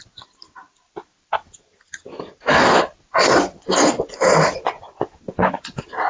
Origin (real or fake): real